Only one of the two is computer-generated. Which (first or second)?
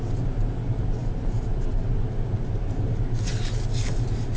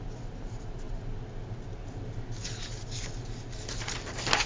first